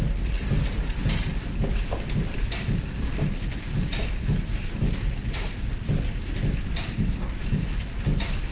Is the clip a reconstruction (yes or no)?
no